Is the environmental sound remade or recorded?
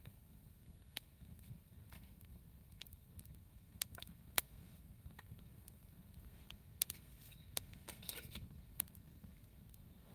remade